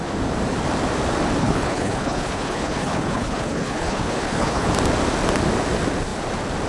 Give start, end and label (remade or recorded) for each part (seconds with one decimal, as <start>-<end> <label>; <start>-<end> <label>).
0.0-1.4 recorded; 1.4-4.7 remade; 4.7-6.7 recorded